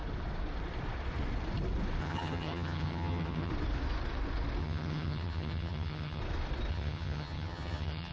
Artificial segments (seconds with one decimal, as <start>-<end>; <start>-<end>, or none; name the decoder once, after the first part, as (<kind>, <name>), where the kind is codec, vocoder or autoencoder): 2.0-3.5 (vocoder, HiFi-GAN); 4.6-6.2; 6.7-8.1